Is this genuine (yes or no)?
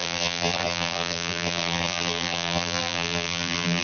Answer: no